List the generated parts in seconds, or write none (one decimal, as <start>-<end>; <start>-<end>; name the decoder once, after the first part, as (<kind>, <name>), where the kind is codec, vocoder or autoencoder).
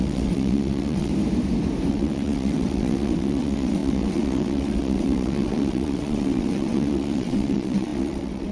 0.0-1.1 (vocoder, WaveNeXt); 1.9-8.5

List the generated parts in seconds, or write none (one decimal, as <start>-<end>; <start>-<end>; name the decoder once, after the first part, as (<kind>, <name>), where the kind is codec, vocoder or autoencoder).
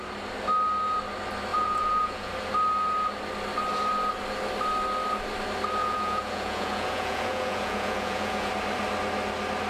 1.5-2.3 (vocoder, Vocos); 5.8-8.5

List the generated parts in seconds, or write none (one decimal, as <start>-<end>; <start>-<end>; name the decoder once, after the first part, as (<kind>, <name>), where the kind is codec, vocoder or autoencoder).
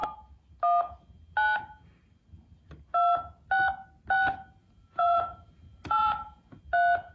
4.6-6.6 (vocoder, Vocos)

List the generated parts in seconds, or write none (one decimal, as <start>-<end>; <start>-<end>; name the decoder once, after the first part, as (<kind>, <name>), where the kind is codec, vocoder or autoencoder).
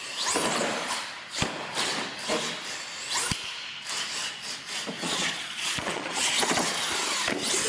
5.0-6.3 (vocoder, Vocos)